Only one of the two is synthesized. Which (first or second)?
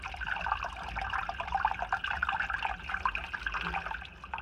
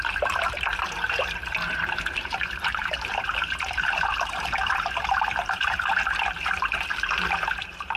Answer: second